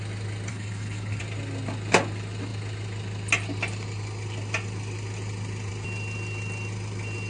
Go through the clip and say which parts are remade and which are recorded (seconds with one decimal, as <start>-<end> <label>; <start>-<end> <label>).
0.0-0.5 recorded; 0.5-1.2 remade; 1.2-7.3 recorded